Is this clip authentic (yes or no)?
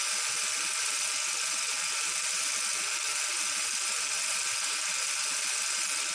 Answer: yes